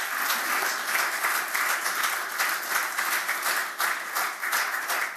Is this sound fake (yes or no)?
no